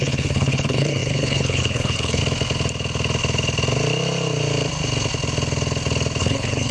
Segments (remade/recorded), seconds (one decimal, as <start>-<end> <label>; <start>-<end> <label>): 0.0-2.2 remade; 2.2-6.2 recorded; 6.2-6.7 remade